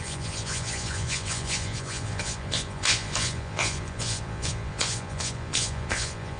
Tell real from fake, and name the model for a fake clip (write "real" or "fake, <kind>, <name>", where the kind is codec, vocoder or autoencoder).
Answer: fake, vocoder, Vocos